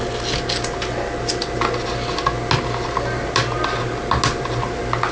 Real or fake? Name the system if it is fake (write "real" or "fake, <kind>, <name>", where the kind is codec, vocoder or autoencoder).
real